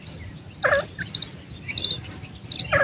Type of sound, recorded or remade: recorded